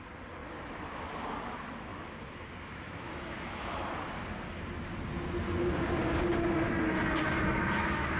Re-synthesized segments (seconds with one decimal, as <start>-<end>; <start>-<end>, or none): 1.9-3.9